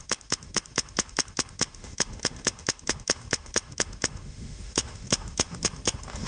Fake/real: fake